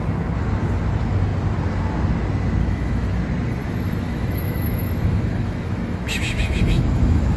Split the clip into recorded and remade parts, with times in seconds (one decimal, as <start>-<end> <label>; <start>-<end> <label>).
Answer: 0.0-2.6 recorded; 2.6-3.2 remade; 3.2-3.6 recorded; 3.6-7.4 remade